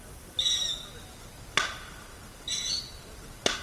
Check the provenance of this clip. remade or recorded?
recorded